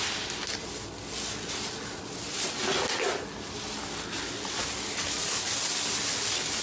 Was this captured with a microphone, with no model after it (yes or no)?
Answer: yes